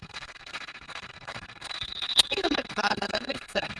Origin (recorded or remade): remade